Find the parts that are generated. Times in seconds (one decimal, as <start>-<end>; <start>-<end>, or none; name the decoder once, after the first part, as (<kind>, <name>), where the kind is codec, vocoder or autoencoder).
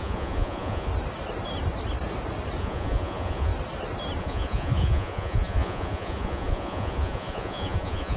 0.0-0.9 (vocoder, Vocos); 2.6-3.5; 4.2-8.2